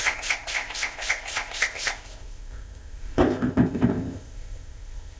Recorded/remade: remade